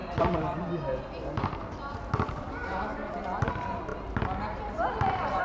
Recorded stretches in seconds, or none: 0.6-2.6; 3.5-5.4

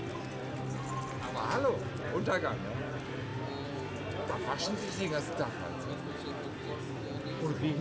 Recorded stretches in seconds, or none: 0.0-7.8

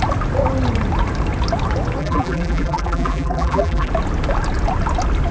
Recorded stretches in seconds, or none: 0.0-2.0; 3.9-5.3

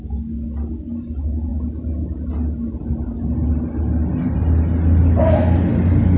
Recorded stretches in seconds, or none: 0.0-6.2

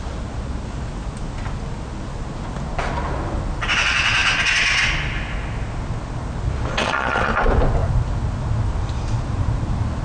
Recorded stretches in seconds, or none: 0.0-6.8; 7.3-10.0

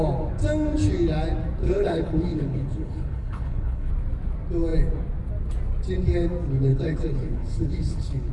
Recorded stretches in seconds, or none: 0.0-1.6; 3.9-6.7

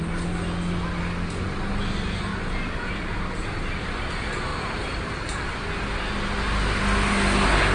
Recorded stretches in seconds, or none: 0.0-2.3; 4.1-4.5; 5.7-7.7